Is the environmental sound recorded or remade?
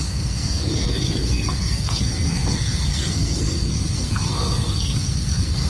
remade